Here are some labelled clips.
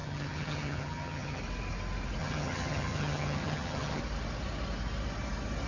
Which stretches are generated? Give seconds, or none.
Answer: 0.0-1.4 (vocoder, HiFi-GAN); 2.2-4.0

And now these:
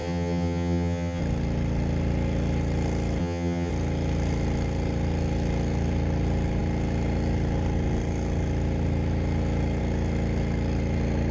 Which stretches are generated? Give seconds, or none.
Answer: 0.0-1.2 (vocoder, HiFi-GAN); 3.2-3.7

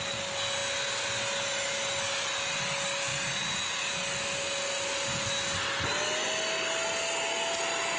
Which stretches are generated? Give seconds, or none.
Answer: none

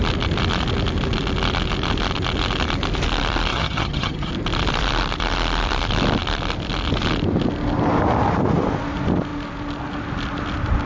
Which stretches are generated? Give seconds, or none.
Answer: 3.5-4.3 (vocoder, HiFi-GAN)

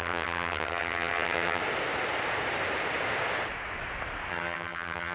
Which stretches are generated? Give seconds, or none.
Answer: 0.0-1.6 (vocoder, HiFi-GAN); 4.3-5.1

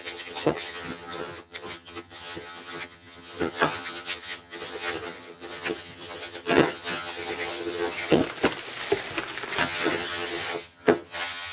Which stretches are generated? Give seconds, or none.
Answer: 0.0-8.2 (vocoder, HiFi-GAN); 9.6-11.5